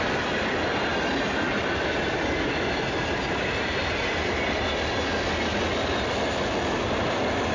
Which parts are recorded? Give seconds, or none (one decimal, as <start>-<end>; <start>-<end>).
0.0-7.5